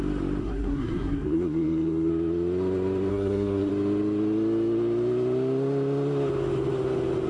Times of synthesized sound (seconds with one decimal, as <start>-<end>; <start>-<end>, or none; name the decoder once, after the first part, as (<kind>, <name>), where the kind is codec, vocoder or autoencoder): 0.4-2.1 (codec, SNAC); 3.1-3.7